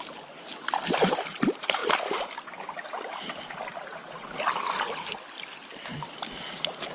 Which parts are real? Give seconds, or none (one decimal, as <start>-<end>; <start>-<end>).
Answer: 0.0-6.9